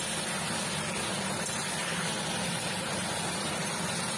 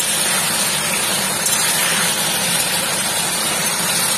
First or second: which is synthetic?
second